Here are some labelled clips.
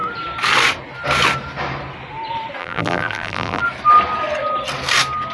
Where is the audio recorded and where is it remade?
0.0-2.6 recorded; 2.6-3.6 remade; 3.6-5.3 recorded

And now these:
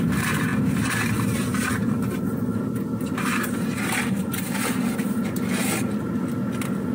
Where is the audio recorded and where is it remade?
0.0-6.9 recorded

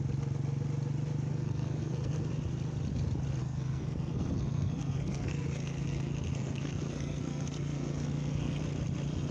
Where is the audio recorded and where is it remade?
0.0-1.3 recorded; 1.3-2.3 remade; 2.3-3.4 recorded; 3.4-8.6 remade; 8.6-9.3 recorded

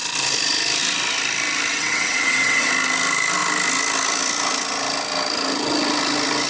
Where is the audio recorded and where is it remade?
0.0-1.7 recorded; 1.7-2.7 remade; 2.7-6.5 recorded

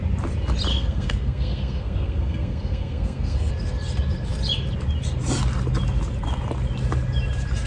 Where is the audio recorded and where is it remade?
0.0-0.7 recorded; 0.7-3.5 remade; 3.5-7.7 recorded

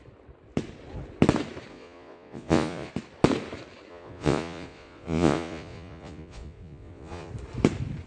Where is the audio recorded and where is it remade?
0.0-1.7 recorded; 1.7-2.9 remade; 2.9-3.9 recorded; 3.9-7.3 remade; 7.3-8.1 recorded